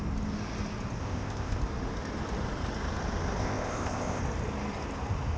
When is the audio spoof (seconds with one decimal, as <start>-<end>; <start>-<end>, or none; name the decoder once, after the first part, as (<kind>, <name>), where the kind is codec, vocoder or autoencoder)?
1.0-1.6 (codec, ZipCodec); 3.4-4.2